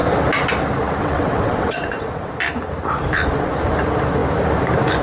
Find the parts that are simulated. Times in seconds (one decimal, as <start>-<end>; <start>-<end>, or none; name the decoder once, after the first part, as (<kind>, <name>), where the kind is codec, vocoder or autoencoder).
1.0-2.3 (vocoder, WaveNeXt)